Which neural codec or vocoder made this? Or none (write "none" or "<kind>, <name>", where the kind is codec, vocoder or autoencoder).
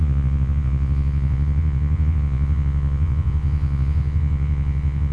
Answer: vocoder, Vocos